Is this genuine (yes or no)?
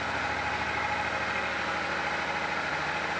yes